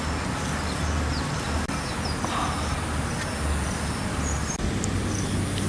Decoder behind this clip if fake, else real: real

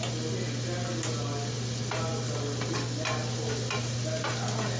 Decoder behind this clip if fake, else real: real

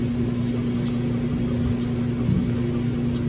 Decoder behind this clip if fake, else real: real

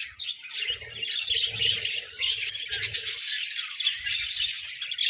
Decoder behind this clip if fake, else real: real